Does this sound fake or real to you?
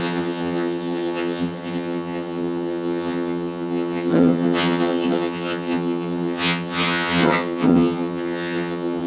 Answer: fake